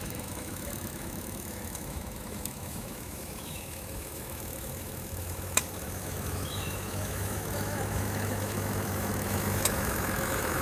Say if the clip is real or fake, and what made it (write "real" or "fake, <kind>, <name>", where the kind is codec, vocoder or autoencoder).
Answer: fake, autoencoder, DAC-VAE